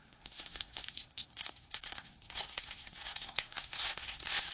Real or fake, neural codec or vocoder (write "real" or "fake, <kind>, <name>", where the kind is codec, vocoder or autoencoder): fake, codec, SNAC